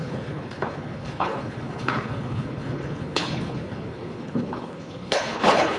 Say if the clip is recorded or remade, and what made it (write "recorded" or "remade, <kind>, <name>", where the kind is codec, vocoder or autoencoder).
remade, codec, HILCodec